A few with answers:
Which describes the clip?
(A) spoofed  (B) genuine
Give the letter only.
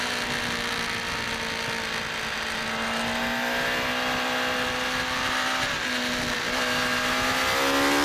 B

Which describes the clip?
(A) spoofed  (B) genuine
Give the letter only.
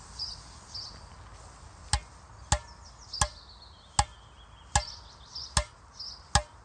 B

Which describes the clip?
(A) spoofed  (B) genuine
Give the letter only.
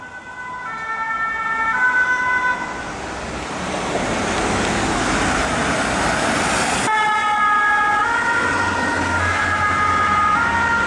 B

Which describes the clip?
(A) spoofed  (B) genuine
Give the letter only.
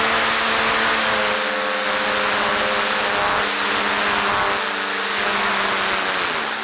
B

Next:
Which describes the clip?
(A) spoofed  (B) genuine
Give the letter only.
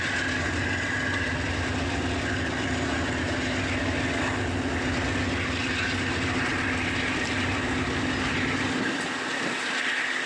B